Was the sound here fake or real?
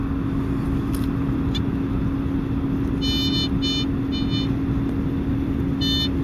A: real